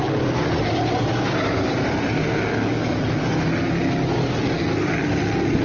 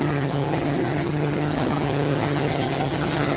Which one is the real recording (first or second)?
first